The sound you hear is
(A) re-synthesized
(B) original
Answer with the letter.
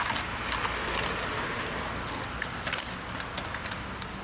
B